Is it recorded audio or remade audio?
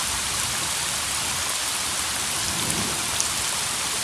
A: remade